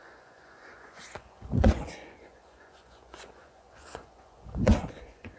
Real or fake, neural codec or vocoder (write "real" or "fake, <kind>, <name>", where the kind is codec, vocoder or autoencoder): fake, vocoder, Vocos